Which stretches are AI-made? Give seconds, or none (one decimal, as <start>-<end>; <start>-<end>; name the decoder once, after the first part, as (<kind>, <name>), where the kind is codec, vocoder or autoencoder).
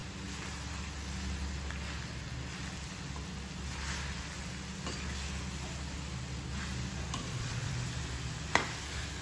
7.2-7.7 (vocoder, Vocos)